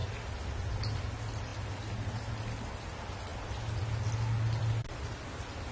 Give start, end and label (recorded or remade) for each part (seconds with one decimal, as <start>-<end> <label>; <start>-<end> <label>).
0.0-5.7 recorded